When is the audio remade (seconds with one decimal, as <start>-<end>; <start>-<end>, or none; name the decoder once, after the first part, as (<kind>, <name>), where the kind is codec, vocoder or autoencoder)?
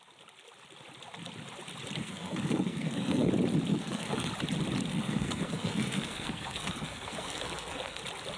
2.0-3.3 (codec, SNAC); 3.7-4.3; 4.9-8.0